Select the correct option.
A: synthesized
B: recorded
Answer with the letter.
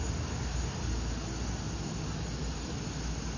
B